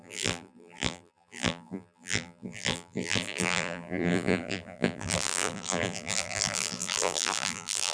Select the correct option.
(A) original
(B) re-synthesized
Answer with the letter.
B